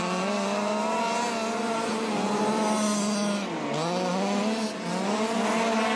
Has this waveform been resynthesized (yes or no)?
no